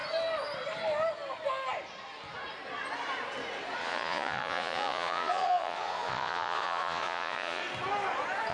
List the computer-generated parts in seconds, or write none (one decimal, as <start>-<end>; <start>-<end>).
3.8-7.6